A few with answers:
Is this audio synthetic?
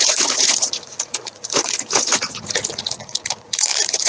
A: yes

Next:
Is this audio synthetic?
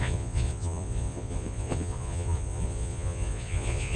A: yes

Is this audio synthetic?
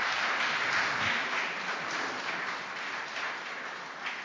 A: no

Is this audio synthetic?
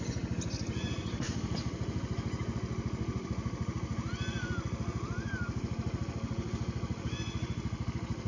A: no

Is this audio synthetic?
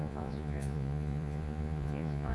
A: yes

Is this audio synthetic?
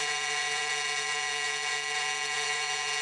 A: yes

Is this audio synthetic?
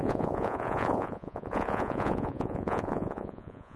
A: yes